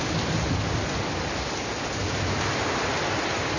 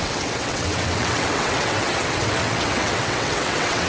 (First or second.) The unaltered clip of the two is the first